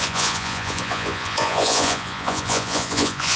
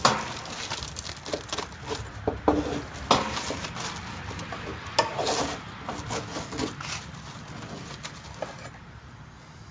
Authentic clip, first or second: second